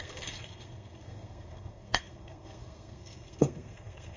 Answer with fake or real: fake